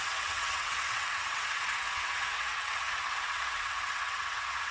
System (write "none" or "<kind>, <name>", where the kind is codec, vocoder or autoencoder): vocoder, WaveNeXt